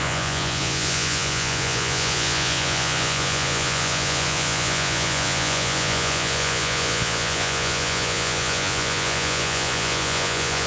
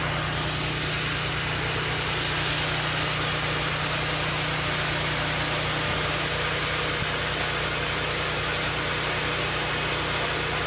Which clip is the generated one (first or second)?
first